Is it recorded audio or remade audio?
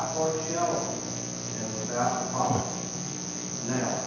recorded